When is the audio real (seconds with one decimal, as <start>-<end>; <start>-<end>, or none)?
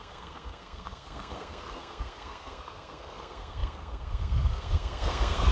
none